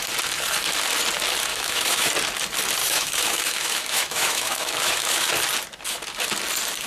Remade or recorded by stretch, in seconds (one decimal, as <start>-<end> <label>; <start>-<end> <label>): 0.0-1.5 recorded; 1.5-2.1 remade; 2.1-2.8 recorded; 2.8-5.3 remade; 5.3-6.9 recorded